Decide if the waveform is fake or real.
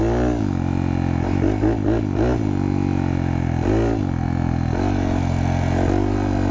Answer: real